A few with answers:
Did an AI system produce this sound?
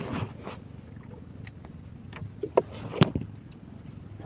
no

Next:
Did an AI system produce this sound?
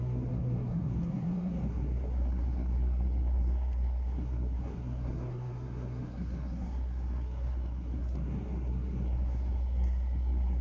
yes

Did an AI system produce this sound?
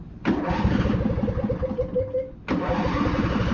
no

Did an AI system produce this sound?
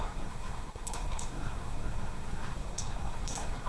yes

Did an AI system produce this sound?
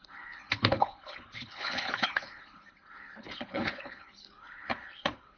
yes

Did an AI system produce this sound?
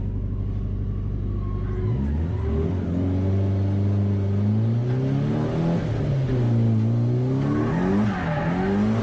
no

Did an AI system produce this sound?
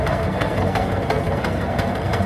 yes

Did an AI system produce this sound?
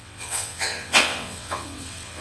yes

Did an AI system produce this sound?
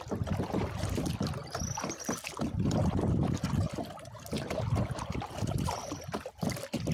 no